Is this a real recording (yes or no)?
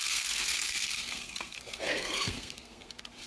no